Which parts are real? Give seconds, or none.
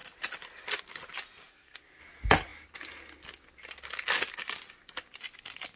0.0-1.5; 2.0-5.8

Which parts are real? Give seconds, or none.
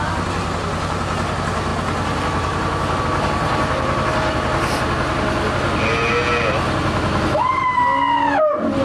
0.0-8.8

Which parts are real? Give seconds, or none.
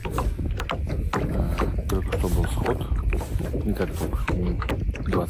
0.0-4.2; 4.7-5.3